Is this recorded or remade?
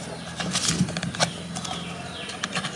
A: recorded